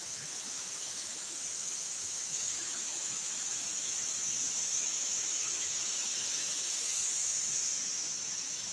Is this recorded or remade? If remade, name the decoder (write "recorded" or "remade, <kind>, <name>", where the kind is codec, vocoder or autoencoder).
remade, autoencoder, DAC-VAE